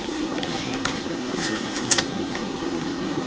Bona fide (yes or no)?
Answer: no